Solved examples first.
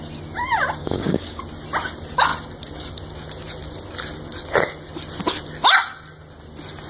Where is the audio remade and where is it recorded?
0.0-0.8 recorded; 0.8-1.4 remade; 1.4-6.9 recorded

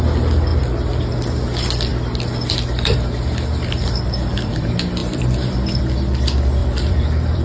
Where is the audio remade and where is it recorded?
0.0-0.5 recorded; 0.5-1.0 remade; 1.0-5.0 recorded; 5.0-5.9 remade; 5.9-6.6 recorded; 6.6-7.4 remade